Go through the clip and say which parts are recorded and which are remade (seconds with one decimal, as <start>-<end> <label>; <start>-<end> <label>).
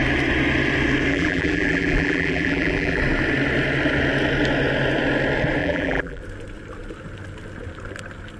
0.0-1.1 recorded; 1.1-3.0 remade; 3.0-5.6 recorded; 5.6-6.2 remade; 6.2-8.4 recorded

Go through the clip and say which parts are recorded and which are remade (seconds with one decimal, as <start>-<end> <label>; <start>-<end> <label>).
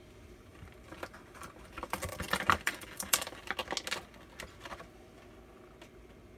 0.0-0.5 recorded; 0.5-3.4 remade; 3.4-6.4 recorded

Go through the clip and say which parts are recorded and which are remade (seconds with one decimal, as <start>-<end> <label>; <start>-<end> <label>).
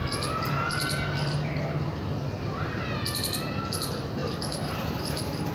0.0-4.2 recorded; 4.2-5.5 remade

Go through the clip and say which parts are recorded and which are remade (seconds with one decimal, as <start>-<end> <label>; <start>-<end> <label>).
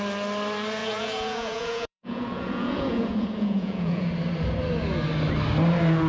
0.0-0.8 recorded; 0.8-4.1 remade; 4.1-6.1 recorded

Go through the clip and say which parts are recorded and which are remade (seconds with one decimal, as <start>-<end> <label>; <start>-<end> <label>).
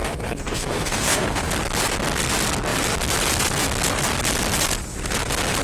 0.0-1.5 remade; 1.5-5.6 recorded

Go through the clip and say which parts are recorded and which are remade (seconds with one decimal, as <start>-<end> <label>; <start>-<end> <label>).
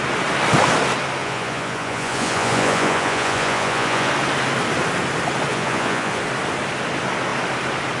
0.0-1.2 recorded; 1.2-4.1 remade; 4.1-5.5 recorded; 5.5-6.2 remade; 6.2-8.0 recorded